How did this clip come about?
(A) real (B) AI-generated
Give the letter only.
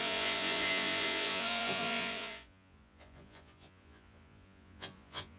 B